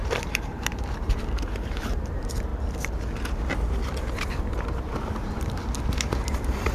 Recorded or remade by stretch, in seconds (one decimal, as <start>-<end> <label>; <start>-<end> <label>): 0.0-2.5 remade; 2.5-4.0 recorded; 4.0-6.7 remade

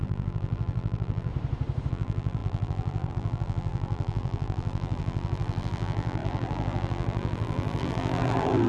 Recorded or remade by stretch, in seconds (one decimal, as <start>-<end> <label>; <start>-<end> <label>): 0.0-1.3 remade; 1.3-1.9 recorded; 1.9-8.7 remade

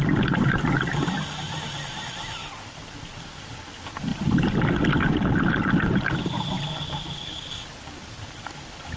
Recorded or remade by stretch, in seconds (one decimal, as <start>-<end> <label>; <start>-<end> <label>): 0.0-2.4 recorded; 2.4-3.3 remade; 3.3-4.1 recorded; 4.1-4.7 remade; 4.7-9.0 recorded

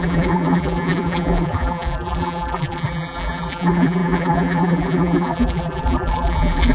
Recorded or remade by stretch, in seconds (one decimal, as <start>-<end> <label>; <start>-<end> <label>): 0.0-6.7 remade

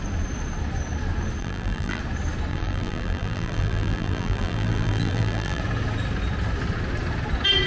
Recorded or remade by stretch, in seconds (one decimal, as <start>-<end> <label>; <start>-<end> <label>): 0.0-1.4 recorded; 1.4-2.0 remade; 2.0-2.5 recorded; 2.5-5.6 remade; 5.6-7.7 recorded

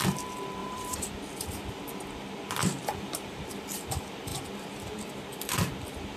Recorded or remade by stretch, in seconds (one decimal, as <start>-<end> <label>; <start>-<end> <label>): 0.0-0.6 recorded; 0.6-1.1 remade; 1.1-2.6 recorded; 2.6-3.4 remade; 3.4-6.2 recorded

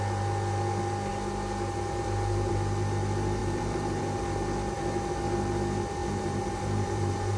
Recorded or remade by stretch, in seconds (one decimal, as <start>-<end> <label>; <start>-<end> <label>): 0.0-3.4 recorded; 3.4-4.0 remade; 4.0-6.0 recorded; 6.0-7.4 remade